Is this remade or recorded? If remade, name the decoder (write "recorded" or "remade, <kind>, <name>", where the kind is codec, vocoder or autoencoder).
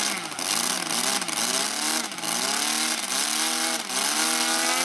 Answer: recorded